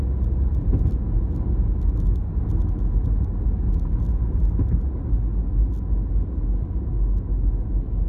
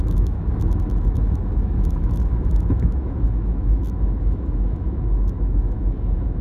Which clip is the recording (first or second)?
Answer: first